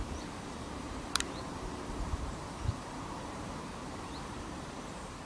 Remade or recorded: remade